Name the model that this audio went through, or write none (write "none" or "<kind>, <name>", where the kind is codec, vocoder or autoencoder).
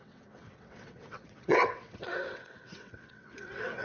vocoder, WaveNeXt